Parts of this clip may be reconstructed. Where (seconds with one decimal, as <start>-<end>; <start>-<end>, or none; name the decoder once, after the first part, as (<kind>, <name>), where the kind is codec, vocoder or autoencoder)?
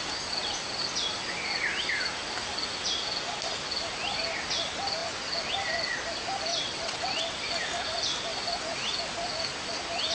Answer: 6.5-7.3 (vocoder, WaveNeXt)